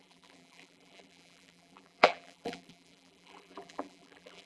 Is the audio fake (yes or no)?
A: yes